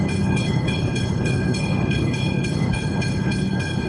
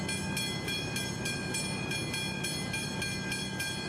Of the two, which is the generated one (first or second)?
first